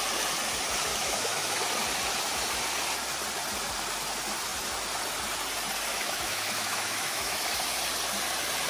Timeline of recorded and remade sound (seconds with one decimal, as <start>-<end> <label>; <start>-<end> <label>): 0.0-0.9 recorded; 0.9-1.6 remade; 1.6-5.9 recorded; 5.9-7.6 remade; 7.6-8.7 recorded